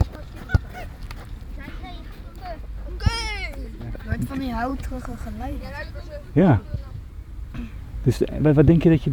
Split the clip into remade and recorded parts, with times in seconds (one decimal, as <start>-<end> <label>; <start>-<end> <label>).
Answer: 0.0-4.7 recorded; 4.7-7.1 remade; 7.1-9.1 recorded